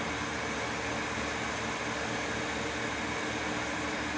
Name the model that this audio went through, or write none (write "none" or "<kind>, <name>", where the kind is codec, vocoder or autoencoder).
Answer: none